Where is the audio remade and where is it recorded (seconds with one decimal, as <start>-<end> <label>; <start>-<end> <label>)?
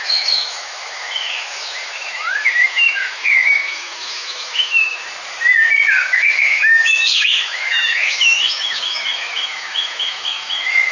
0.0-5.0 remade; 5.0-6.1 recorded; 6.1-10.9 remade